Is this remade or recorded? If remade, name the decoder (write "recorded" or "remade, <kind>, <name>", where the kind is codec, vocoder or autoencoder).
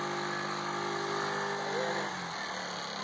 recorded